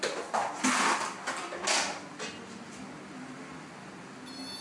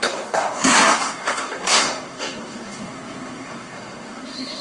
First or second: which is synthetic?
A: second